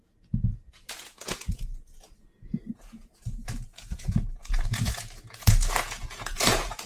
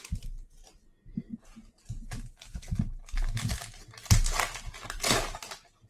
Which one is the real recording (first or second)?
second